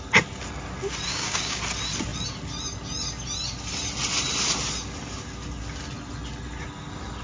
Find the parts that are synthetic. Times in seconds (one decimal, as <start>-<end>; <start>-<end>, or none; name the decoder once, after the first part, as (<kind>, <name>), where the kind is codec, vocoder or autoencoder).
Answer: 1.1-1.6 (codec, DAC)